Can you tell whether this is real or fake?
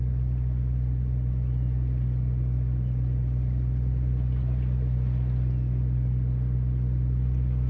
real